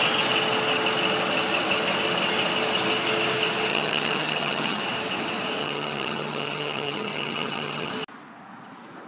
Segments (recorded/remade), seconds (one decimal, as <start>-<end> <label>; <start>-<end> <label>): 0.0-3.7 recorded; 3.7-4.8 remade; 4.8-5.6 recorded; 5.6-7.9 remade; 7.9-9.1 recorded